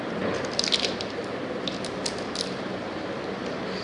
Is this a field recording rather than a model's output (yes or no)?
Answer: yes